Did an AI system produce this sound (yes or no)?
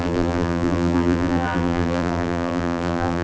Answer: yes